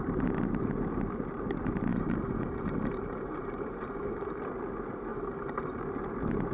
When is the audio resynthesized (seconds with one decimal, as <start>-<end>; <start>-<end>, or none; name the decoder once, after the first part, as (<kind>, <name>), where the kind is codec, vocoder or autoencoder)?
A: 1.9-4.4 (vocoder, BigVGAN v2); 5.1-5.8